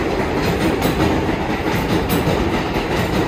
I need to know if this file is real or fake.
real